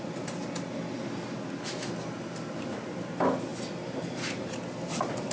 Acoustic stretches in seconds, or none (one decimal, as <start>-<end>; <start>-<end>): 0.0-5.3